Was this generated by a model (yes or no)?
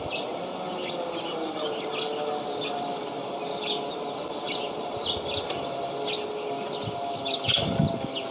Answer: no